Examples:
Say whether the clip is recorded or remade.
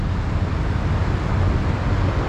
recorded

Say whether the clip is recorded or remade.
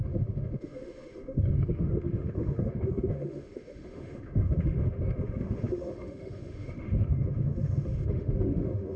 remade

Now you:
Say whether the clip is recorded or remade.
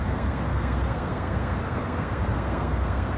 remade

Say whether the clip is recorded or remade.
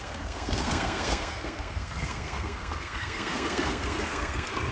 remade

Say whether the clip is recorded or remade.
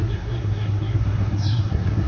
remade